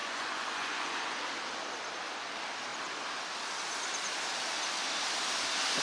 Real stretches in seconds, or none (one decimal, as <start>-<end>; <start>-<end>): 1.3-5.8